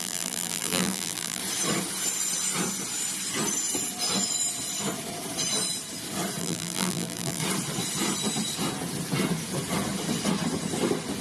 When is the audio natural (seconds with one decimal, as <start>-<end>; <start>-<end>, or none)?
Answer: 1.4-6.4; 7.4-11.2